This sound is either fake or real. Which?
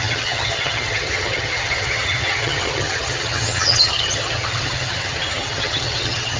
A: fake